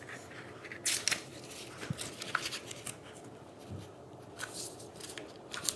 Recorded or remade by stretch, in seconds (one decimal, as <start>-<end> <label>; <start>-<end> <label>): 0.0-5.8 recorded